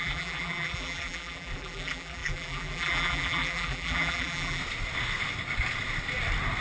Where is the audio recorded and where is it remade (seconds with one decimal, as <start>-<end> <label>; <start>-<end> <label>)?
0.0-4.6 remade; 4.6-6.6 recorded